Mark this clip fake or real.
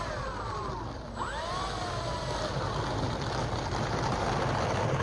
real